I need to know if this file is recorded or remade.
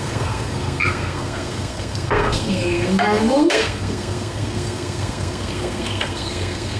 remade